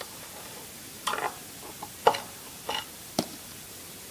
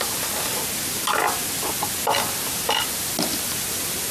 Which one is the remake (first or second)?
first